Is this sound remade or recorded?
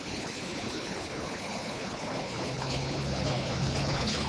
remade